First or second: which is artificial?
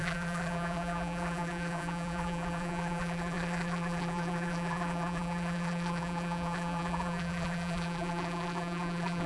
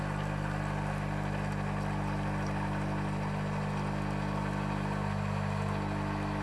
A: first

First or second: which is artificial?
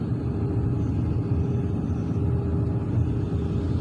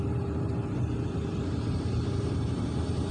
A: second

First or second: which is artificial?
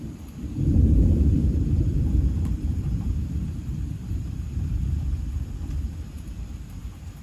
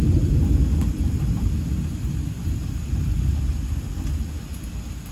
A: first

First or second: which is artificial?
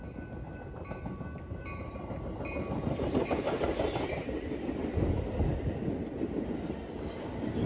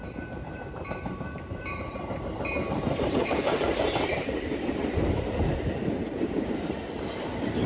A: second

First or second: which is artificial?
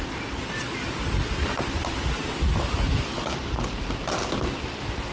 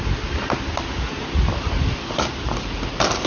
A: first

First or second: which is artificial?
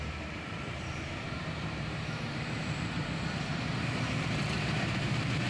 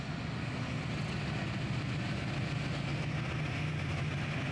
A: first